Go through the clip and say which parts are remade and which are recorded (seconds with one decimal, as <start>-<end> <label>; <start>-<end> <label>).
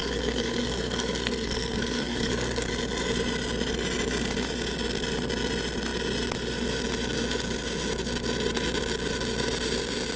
0.0-2.7 remade; 2.7-10.2 recorded